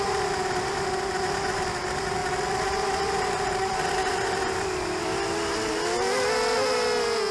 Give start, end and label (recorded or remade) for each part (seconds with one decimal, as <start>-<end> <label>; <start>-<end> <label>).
0.0-7.3 recorded